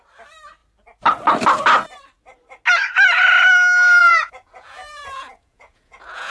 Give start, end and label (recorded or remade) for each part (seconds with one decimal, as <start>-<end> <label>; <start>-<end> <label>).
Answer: 0.0-4.0 recorded; 4.0-6.3 remade